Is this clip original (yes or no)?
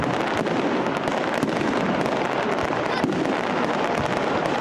yes